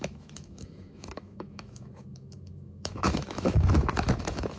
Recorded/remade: remade